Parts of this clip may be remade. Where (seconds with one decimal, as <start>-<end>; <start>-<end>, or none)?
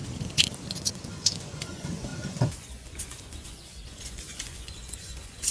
0.7-5.5